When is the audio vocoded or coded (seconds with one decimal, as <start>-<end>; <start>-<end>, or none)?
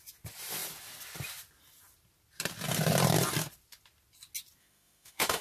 4.6-5.4